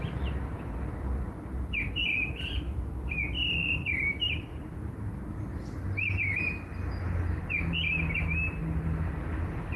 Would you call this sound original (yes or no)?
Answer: yes